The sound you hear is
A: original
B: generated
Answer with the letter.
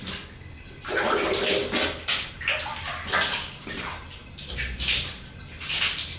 A